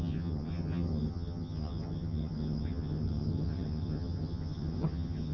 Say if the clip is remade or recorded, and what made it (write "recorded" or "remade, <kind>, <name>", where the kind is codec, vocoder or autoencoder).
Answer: remade, vocoder, HiFi-GAN